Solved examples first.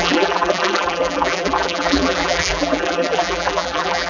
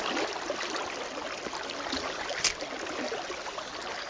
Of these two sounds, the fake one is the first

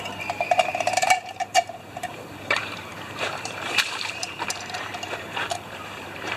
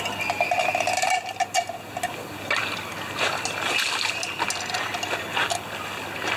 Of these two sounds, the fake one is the first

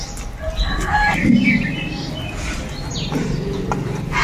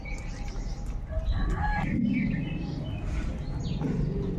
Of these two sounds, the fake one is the second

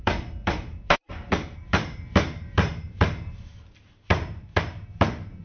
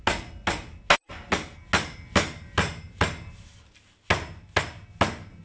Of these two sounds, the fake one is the first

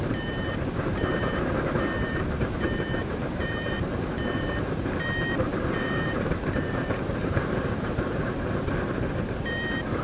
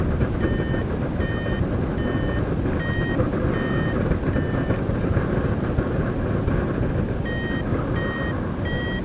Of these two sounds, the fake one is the first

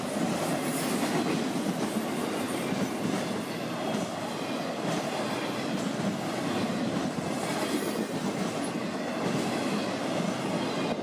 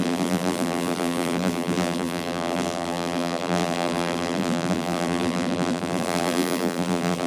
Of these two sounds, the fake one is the second